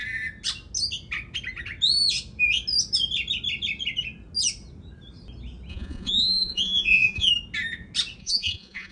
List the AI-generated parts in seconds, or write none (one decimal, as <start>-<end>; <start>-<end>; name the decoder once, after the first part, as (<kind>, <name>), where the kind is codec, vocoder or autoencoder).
5.7-7.3 (vocoder, Vocos); 8.2-8.9